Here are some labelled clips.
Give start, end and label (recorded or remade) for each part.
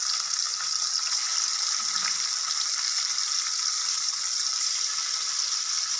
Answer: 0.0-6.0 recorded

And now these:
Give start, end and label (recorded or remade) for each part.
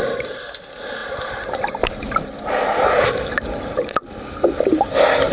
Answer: 0.0-1.0 recorded; 1.0-4.2 remade; 4.2-5.3 recorded